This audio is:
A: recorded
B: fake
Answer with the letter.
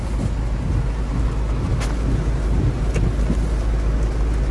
A